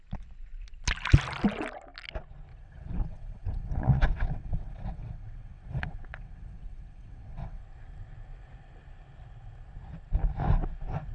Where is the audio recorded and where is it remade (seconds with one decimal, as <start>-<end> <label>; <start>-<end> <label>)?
0.0-2.5 recorded; 2.5-7.6 remade; 7.6-11.1 recorded